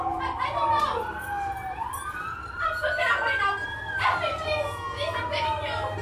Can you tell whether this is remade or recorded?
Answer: recorded